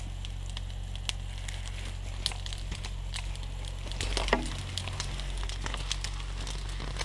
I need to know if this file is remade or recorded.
recorded